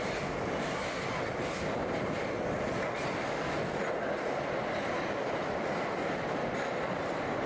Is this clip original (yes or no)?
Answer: yes